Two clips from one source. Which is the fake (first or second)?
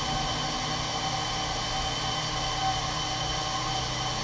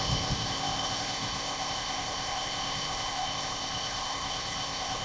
second